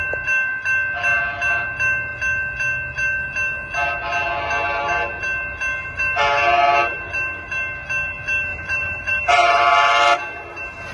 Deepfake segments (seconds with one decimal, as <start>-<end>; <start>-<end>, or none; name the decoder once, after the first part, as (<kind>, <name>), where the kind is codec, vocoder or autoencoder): 8.5-9.6 (vocoder, BigVGAN v2)